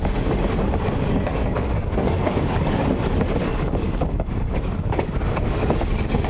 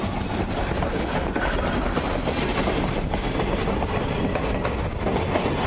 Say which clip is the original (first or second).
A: second